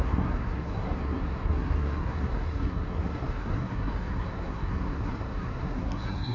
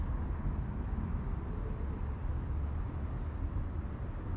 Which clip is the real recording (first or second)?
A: second